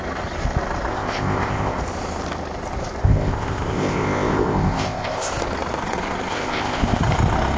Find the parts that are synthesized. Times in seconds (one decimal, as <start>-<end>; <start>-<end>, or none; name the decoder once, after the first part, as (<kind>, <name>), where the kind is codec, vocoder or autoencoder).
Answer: 0.9-1.8 (codec, ZipCodec); 3.0-5.3; 6.3-7.0